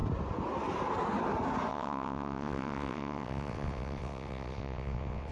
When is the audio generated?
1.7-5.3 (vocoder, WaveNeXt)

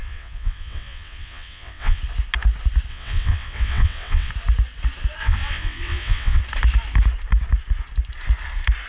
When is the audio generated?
0.0-2.0 (vocoder, WaveNeXt); 2.9-4.3; 5.2-6.4

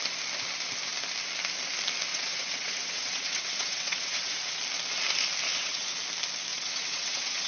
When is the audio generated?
2.1-4.6 (vocoder, WaveNeXt); 5.5-6.0; 6.5-7.5

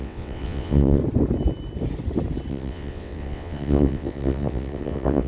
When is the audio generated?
0.0-1.0 (vocoder, WaveNeXt); 2.5-5.3

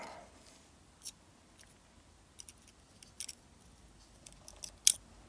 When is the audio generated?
none

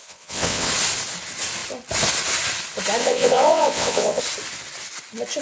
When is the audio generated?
0.0-0.7 (vocoder, WaveNeXt); 3.0-4.2

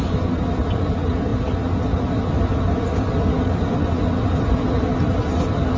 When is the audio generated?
none